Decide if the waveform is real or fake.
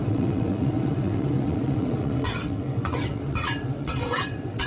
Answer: fake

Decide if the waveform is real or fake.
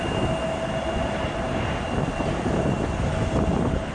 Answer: real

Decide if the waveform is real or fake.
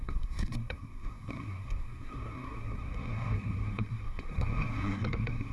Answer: fake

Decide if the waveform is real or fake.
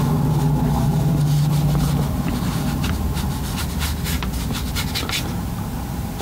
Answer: real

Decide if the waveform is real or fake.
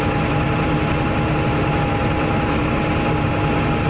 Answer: fake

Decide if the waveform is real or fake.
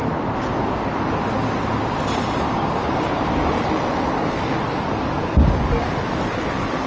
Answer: real